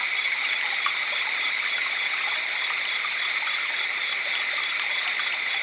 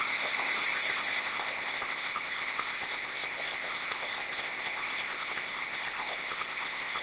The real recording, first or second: first